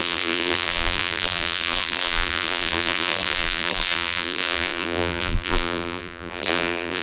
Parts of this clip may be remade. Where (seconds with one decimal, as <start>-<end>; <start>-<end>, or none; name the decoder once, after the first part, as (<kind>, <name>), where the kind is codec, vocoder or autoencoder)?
0.0-7.0 (vocoder, BigVGAN v2)